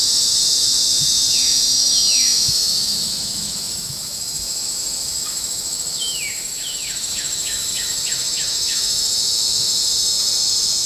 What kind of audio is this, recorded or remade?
remade